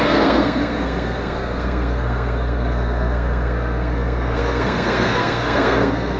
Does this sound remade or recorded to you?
remade